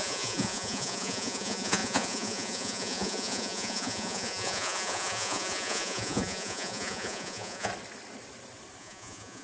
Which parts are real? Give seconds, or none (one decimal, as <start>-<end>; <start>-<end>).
7.7-8.8